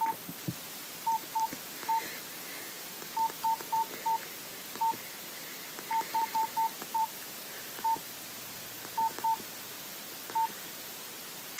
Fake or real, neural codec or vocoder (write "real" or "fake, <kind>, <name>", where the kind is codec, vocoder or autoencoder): fake, vocoder, BigVGAN v2